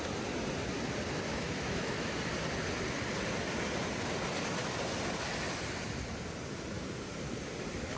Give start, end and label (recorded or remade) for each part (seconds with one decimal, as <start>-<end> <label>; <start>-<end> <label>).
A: 0.0-1.3 recorded; 1.3-2.2 remade; 2.2-8.0 recorded